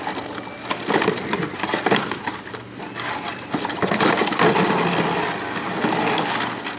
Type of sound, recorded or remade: recorded